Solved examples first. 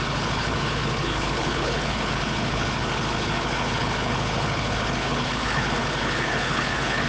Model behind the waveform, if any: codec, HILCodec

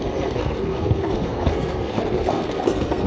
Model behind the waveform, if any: codec, SNAC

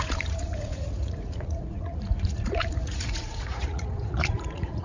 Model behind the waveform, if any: vocoder, Vocos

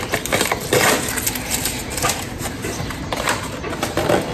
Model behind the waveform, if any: none